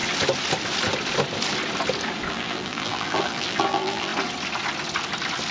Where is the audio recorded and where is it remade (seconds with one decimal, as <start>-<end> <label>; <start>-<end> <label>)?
0.0-2.3 recorded; 2.3-4.1 remade; 4.1-5.5 recorded

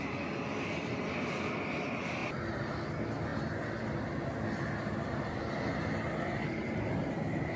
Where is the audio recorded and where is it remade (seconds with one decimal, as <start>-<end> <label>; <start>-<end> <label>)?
0.0-7.6 recorded

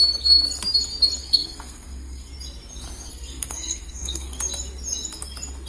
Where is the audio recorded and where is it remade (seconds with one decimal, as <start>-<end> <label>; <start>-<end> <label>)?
0.0-1.2 recorded; 1.2-2.3 remade; 2.3-3.1 recorded; 3.1-4.4 remade; 4.4-5.7 recorded

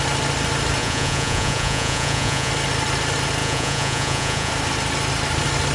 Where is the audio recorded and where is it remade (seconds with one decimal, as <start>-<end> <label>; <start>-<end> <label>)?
0.0-0.8 recorded; 0.8-2.5 remade; 2.5-3.4 recorded; 3.4-4.5 remade; 4.5-5.7 recorded

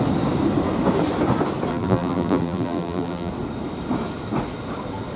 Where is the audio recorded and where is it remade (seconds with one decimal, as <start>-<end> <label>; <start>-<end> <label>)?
0.0-1.7 recorded; 1.7-3.3 remade; 3.3-5.2 recorded

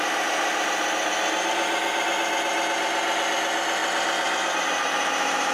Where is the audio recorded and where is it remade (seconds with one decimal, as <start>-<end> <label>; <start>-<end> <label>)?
0.0-5.5 recorded

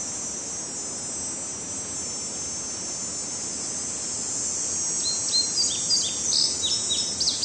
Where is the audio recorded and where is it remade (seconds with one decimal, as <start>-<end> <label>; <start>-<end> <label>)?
0.0-7.4 recorded